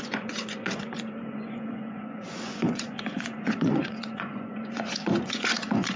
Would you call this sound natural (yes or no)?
no